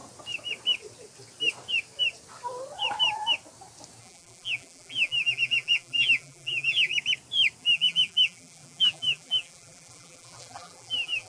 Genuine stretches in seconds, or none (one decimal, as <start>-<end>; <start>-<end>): 0.0-4.0; 6.9-7.6

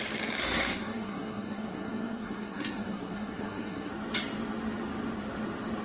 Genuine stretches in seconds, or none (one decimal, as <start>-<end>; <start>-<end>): 0.0-0.4; 3.9-5.8

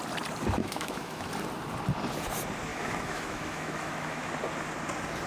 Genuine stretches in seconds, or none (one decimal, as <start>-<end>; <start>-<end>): 0.0-0.6; 1.3-2.7; 4.3-5.3

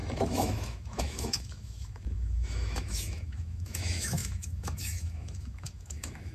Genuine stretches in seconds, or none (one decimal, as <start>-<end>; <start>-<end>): none

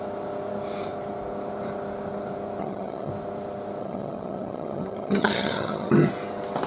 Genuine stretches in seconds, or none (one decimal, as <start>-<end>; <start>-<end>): 0.0-2.6; 3.1-3.8; 6.1-6.7